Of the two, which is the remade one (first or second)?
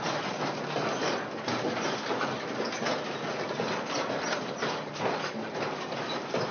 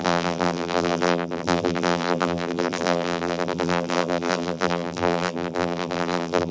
second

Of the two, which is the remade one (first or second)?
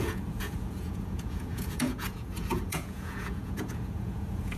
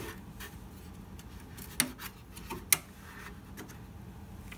first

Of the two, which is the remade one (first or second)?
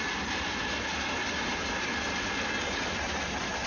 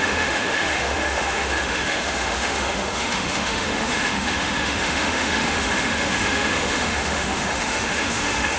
second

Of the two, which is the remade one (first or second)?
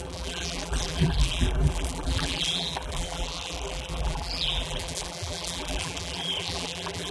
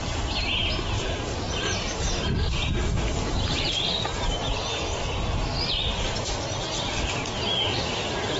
first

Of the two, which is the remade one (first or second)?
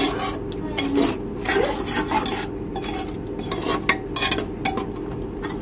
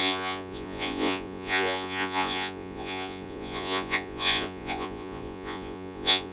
second